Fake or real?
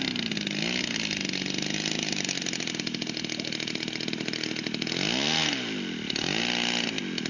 real